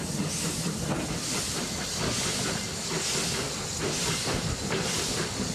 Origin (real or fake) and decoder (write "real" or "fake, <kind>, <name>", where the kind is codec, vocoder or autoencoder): real